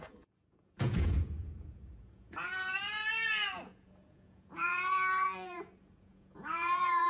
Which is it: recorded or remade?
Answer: remade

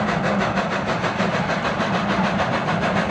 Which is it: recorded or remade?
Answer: recorded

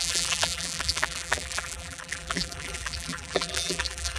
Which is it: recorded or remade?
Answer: remade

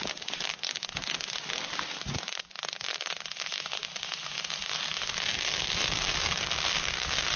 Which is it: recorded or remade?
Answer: recorded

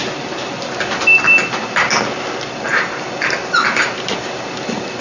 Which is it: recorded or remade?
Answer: recorded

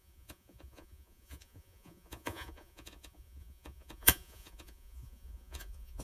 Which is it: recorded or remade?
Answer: remade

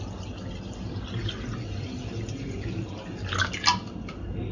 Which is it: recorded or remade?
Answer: recorded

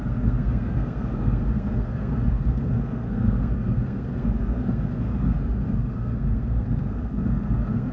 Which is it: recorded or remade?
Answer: remade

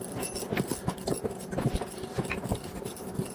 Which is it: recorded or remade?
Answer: recorded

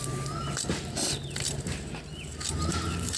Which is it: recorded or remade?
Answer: recorded